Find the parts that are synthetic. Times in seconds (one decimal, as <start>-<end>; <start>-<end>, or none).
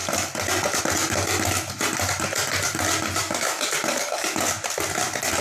3.2-4.5